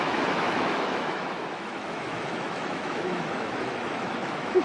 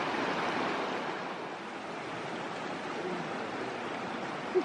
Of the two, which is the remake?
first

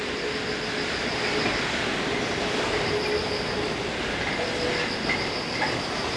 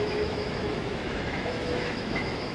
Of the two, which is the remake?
second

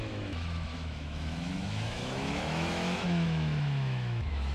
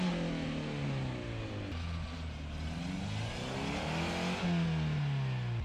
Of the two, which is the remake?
first